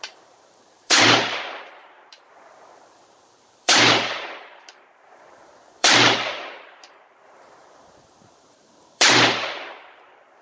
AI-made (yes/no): yes